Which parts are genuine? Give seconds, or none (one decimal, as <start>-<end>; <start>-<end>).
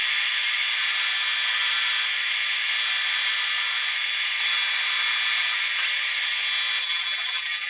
0.0-6.8